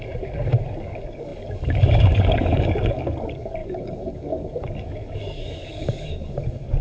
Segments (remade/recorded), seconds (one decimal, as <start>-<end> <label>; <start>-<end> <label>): 0.0-6.8 remade